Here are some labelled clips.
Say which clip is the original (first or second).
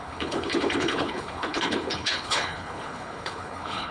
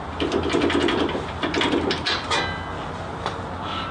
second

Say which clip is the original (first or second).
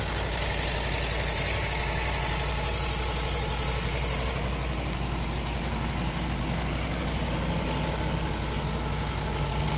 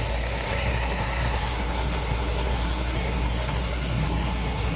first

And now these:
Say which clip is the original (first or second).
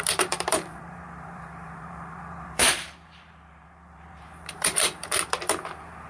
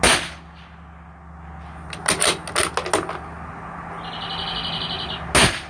second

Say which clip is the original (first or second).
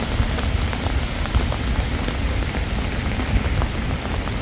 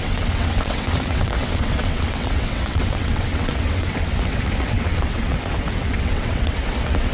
first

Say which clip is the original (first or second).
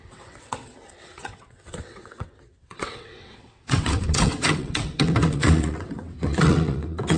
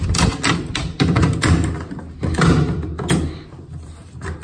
second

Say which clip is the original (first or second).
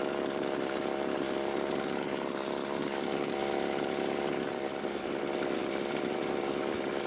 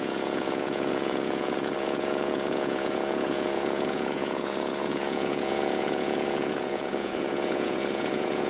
first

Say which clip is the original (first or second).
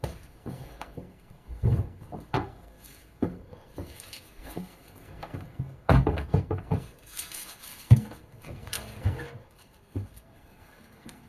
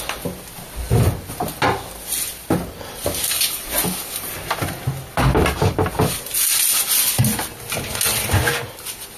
second